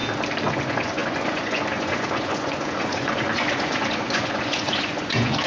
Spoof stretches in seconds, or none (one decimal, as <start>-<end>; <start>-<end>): 0.5-5.5